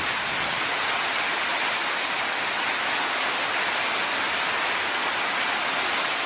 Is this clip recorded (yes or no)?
yes